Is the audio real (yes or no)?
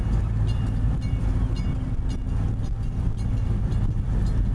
no